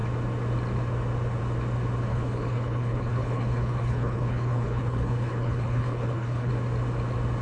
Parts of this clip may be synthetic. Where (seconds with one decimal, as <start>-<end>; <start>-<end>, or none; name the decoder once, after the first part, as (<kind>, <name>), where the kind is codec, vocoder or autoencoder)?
2.1-6.5 (codec, HILCodec)